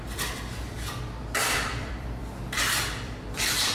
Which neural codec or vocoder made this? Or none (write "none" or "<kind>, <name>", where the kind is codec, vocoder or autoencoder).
vocoder, BigVGAN v2